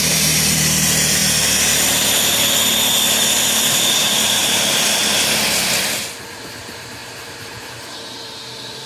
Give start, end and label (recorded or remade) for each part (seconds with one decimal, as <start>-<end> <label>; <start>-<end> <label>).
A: 0.0-1.2 remade; 1.2-3.7 recorded; 3.7-5.0 remade; 5.0-6.3 recorded; 6.3-8.9 remade